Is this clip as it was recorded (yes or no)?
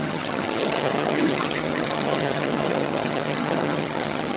no